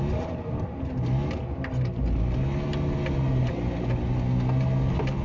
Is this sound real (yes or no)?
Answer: yes